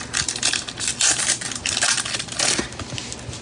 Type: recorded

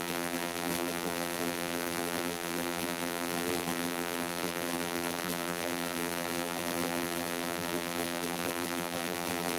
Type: remade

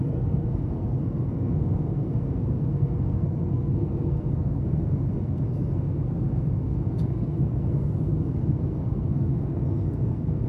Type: remade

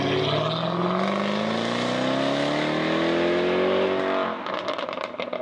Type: recorded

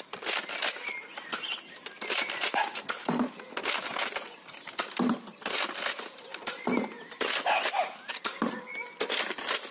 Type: recorded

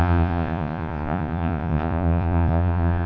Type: remade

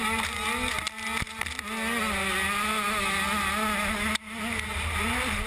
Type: recorded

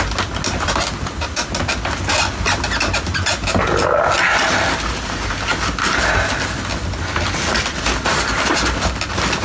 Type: recorded